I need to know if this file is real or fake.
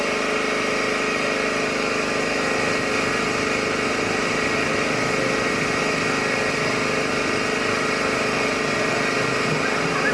real